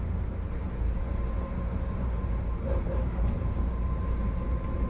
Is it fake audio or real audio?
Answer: fake